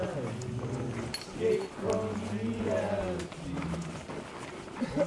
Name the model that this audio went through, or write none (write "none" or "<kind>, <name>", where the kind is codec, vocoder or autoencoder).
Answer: none